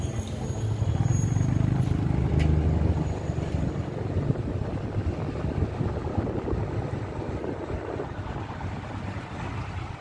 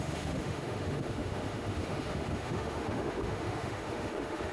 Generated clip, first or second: second